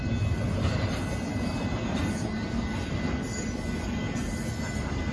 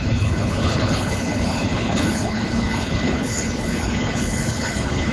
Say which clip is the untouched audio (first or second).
first